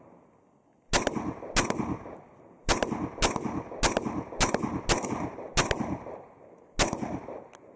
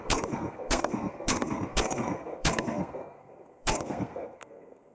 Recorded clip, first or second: first